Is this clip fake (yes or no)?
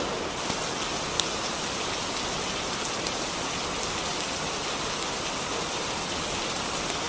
no